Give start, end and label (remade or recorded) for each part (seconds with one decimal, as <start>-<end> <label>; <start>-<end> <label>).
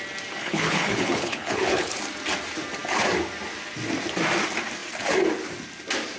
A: 0.0-0.4 recorded; 0.4-2.0 remade; 2.0-6.2 recorded